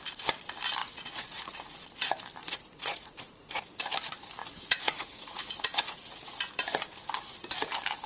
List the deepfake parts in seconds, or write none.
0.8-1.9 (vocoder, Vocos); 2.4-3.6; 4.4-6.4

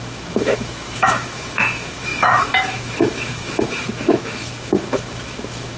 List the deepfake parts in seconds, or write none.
0.0-5.8 (autoencoder, DAC-VAE)

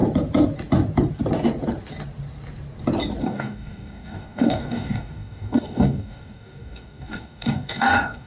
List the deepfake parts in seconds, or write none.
3.2-8.3 (codec, DAC)

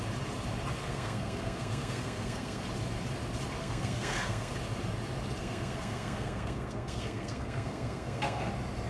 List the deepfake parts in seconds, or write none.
0.8-2.6 (codec, SNAC); 3.6-4.5; 5.4-8.5

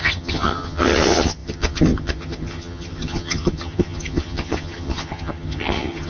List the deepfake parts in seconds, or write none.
0.0-6.1 (vocoder, HiFi-GAN)

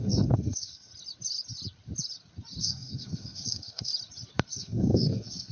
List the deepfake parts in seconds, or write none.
0.0-0.9 (codec, SNAC); 2.6-3.9; 4.5-5.5

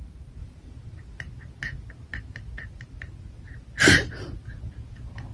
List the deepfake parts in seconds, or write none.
none